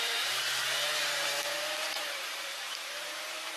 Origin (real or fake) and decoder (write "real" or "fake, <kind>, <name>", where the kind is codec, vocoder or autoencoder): fake, vocoder, BigVGAN v2